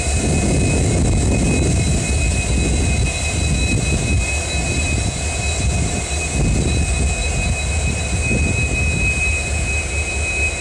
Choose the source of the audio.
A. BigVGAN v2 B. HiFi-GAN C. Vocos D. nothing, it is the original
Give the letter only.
D